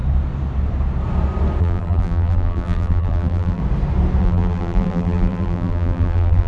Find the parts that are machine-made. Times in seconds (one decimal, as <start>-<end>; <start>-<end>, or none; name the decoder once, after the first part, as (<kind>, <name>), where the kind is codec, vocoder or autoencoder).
1.6-3.6 (vocoder, BigVGAN v2); 4.2-6.5